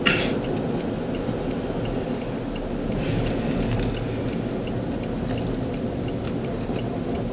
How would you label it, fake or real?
real